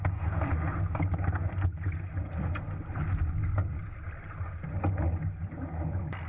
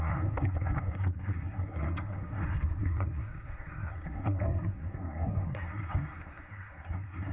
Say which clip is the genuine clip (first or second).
first